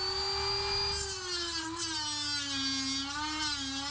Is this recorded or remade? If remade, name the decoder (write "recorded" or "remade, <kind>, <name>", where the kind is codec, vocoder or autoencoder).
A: recorded